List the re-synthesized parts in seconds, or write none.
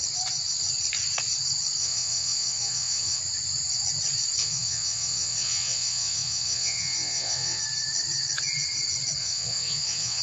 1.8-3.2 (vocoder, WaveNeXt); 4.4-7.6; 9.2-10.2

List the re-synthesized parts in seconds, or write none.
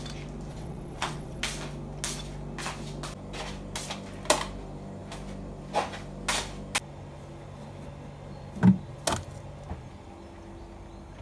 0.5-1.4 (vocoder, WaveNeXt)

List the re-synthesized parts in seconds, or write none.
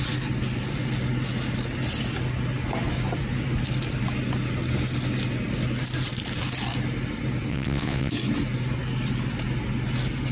7.5-8.1 (vocoder, WaveNeXt)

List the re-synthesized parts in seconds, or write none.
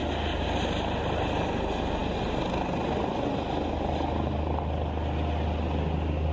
none